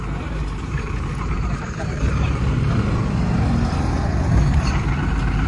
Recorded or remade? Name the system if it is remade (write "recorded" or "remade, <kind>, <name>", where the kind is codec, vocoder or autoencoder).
remade, vocoder, BigVGAN v2